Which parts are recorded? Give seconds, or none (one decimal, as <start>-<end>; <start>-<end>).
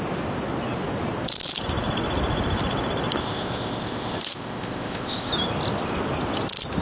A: 0.0-3.2; 5.3-6.8